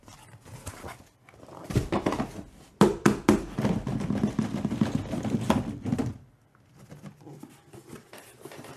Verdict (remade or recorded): recorded